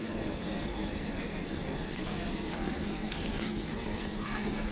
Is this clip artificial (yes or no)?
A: yes